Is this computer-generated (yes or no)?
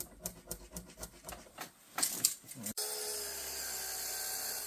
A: no